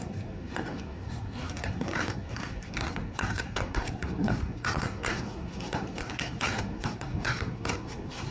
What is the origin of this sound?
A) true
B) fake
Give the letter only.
B